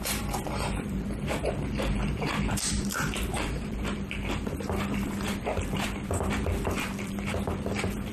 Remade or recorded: remade